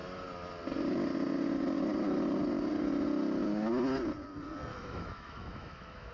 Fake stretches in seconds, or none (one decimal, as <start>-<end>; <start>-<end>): 4.7-6.1